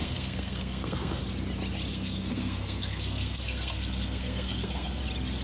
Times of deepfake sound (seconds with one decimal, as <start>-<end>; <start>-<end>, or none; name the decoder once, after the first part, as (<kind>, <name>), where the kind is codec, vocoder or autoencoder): 0.0-1.2 (codec, SNAC); 1.9-5.0